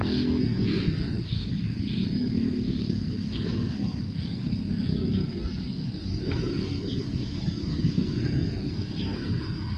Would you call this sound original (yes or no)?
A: no